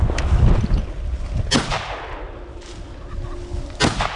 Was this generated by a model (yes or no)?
no